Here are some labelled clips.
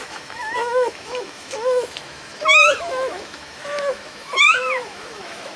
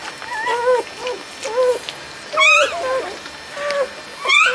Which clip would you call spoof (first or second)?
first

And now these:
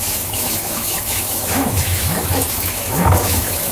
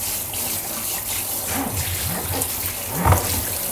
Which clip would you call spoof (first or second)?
first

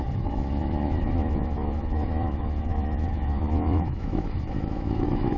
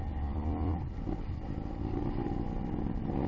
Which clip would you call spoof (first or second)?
first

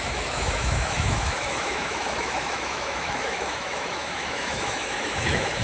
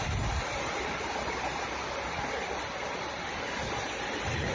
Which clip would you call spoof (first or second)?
first